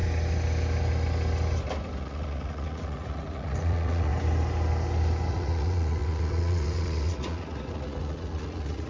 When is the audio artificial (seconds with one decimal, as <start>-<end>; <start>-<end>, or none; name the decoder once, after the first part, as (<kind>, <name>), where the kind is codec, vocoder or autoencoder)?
2.0-4.1 (vocoder, Vocos); 5.3-8.9